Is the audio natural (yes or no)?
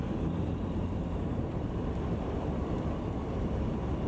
no